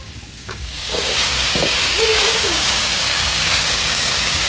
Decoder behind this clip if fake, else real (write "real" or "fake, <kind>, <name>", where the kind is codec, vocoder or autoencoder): fake, codec, DAC